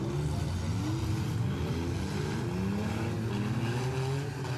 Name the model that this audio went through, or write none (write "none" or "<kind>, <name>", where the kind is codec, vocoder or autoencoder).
none